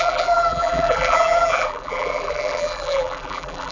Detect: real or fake fake